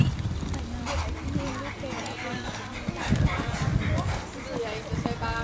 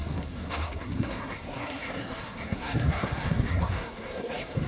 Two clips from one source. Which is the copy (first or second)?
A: second